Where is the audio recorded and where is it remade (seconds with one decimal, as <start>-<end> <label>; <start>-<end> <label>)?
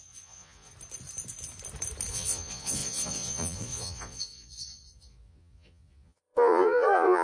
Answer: 0.0-0.7 remade; 0.7-2.1 recorded; 2.1-7.2 remade